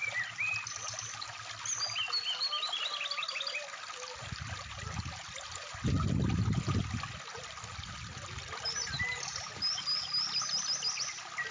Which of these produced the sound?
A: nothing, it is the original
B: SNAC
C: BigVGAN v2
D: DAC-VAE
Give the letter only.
A